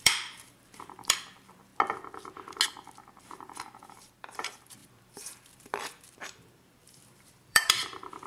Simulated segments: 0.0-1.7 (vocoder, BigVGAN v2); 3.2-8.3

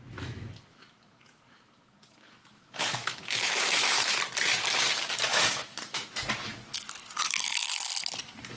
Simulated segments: 0.7-4.2 (autoencoder, DAC-VAE); 5.3-6.1

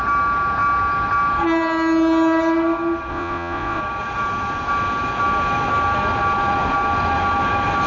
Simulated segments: 3.1-3.8 (vocoder, Vocos)

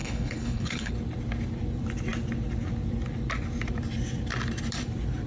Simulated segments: 0.0-0.9 (codec, HILCodec)